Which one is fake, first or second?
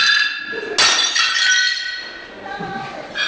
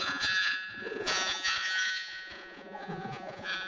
second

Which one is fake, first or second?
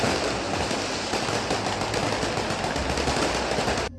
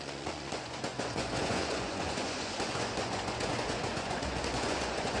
second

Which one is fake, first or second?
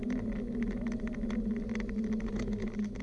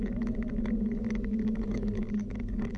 second